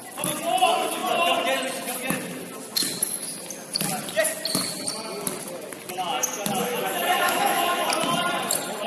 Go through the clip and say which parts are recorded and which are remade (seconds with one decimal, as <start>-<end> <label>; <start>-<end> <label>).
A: 0.0-6.6 recorded; 6.6-7.9 remade; 7.9-8.9 recorded